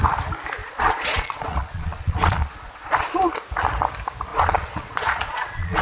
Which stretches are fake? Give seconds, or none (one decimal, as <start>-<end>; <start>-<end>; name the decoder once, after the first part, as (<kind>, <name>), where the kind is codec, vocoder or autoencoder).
0.6-3.2 (vocoder, Vocos); 4.3-5.8